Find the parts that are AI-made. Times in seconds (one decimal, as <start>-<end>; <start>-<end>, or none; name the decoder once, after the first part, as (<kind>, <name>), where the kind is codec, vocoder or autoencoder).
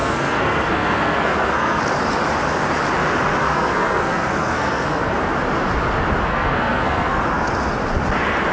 0.0-1.8 (codec, SNAC); 3.4-5.2; 6.3-7.2